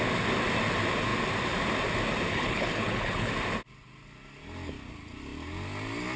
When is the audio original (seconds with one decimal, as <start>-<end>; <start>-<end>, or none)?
0.0-2.3; 3.3-6.2